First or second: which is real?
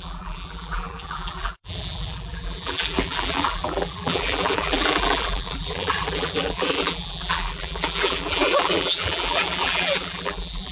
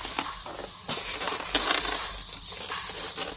second